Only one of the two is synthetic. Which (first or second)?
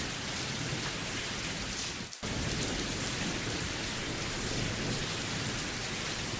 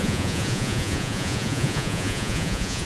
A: second